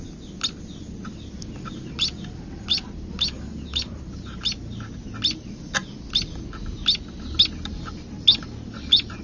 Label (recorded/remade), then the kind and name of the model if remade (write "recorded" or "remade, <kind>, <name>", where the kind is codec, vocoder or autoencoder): recorded